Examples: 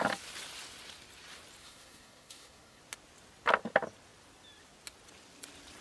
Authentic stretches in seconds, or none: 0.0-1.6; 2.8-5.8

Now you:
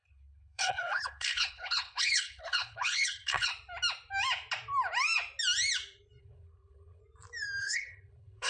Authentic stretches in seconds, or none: 3.5-6.2; 7.0-7.6

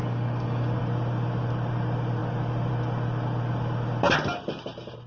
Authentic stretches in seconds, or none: 0.8-5.1

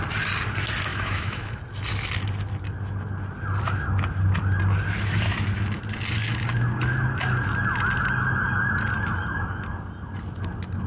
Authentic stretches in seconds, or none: 0.0-0.9; 1.6-10.9

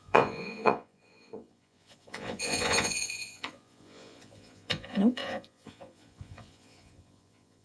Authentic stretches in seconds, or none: none